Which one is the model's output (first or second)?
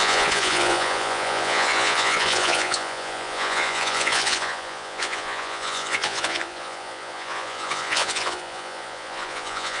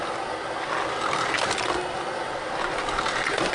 first